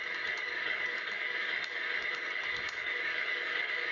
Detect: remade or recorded remade